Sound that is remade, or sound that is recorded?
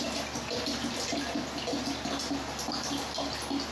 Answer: recorded